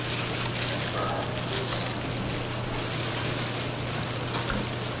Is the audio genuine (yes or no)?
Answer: yes